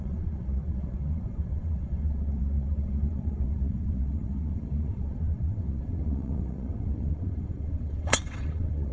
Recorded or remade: remade